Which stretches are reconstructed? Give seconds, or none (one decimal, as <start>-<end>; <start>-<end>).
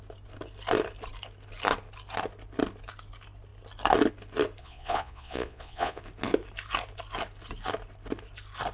4.6-6.0